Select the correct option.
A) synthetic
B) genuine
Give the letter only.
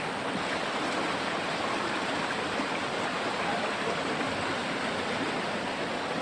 B